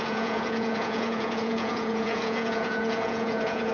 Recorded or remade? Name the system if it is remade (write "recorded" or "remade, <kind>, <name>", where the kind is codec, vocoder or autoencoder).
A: remade, vocoder, Vocos